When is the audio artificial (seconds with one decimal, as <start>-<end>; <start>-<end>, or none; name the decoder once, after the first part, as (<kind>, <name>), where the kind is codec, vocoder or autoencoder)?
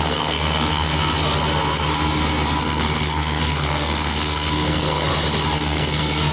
0.0-0.9 (codec, SNAC); 2.6-5.1; 5.6-6.3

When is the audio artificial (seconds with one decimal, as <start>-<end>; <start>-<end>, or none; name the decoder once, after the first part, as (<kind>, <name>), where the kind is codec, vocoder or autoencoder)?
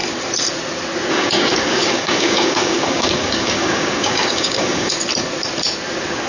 1.1-4.9 (codec, DAC)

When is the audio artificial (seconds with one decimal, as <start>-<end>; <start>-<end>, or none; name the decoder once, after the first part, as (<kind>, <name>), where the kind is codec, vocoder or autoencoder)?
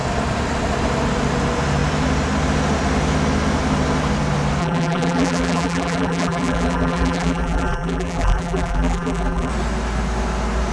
4.6-9.5 (vocoder, BigVGAN v2)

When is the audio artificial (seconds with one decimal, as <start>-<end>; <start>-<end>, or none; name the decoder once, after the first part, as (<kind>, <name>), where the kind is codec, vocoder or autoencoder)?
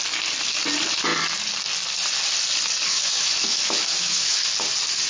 2.9-4.5 (autoencoder, DAC-VAE)